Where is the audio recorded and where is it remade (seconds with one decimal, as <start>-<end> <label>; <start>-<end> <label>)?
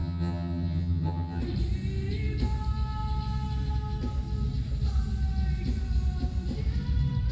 0.0-1.4 remade; 1.4-7.3 recorded